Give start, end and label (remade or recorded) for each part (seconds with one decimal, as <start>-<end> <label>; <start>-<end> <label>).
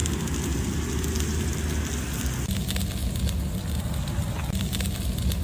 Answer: 0.0-5.4 recorded